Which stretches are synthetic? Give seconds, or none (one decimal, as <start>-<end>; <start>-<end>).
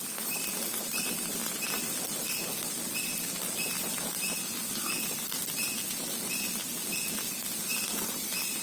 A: 1.4-2.3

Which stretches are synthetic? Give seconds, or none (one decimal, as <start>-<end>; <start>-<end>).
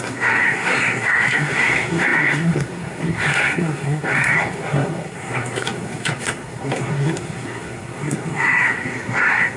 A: 0.0-9.6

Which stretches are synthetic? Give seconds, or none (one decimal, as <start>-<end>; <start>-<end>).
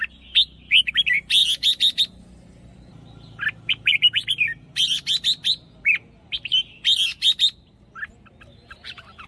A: 1.4-2.0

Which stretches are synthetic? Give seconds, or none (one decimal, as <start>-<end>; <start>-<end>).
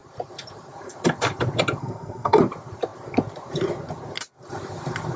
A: 1.8-2.4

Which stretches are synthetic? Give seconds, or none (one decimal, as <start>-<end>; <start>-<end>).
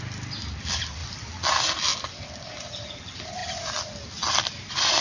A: none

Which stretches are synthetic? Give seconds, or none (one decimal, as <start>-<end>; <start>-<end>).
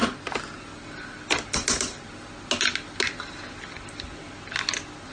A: none